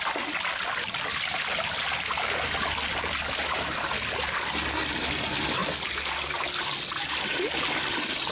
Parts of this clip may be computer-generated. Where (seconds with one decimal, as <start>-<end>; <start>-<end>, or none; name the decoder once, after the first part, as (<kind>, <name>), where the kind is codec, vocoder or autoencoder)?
none